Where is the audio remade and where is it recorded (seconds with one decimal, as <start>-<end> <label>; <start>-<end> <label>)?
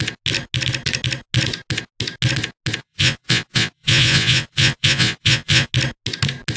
0.0-2.8 recorded; 2.8-5.7 remade; 5.7-6.6 recorded